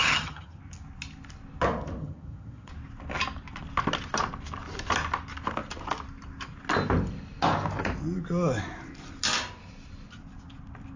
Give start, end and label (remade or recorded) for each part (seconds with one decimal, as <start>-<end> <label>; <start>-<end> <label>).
0.0-0.6 remade; 0.6-2.0 recorded; 2.0-2.7 remade; 2.7-11.0 recorded